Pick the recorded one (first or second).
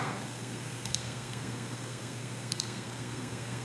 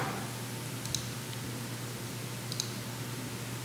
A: second